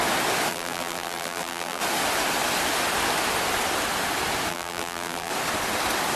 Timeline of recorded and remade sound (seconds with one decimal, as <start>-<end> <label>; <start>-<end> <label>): 0.0-0.5 recorded; 0.5-1.8 remade; 1.8-4.5 recorded; 4.5-5.3 remade; 5.3-6.2 recorded

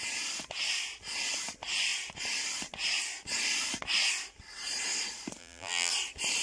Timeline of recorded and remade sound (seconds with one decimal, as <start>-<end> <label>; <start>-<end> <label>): 0.0-5.4 recorded; 5.4-5.9 remade; 5.9-6.4 recorded

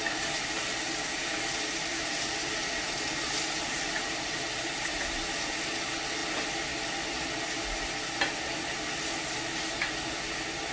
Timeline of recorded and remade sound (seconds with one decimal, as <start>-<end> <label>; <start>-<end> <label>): 0.0-1.9 recorded; 1.9-4.9 remade; 4.9-10.7 recorded

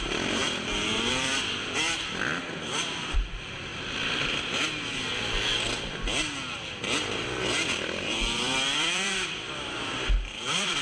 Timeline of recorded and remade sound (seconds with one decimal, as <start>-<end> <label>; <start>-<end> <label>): 0.0-3.7 remade; 3.7-7.8 recorded; 7.8-10.8 remade

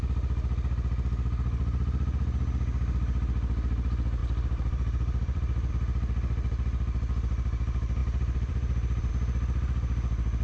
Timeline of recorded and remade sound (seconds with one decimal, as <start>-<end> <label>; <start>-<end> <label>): 0.0-4.2 recorded; 4.2-5.7 remade; 5.7-8.0 recorded; 8.0-9.1 remade; 9.1-10.4 recorded

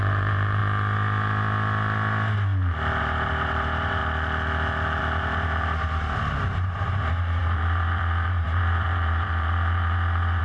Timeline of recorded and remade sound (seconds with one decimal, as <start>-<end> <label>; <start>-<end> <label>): 0.0-0.6 remade; 0.6-3.0 recorded; 3.0-4.0 remade; 4.0-5.0 recorded; 5.0-10.4 remade